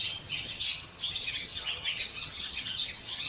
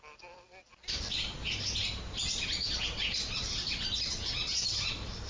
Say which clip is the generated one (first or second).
first